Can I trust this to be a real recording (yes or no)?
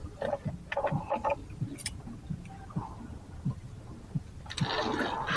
yes